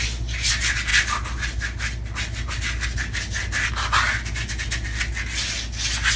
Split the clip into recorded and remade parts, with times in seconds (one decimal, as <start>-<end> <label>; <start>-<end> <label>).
0.0-6.2 recorded